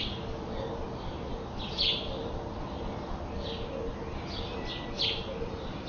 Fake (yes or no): no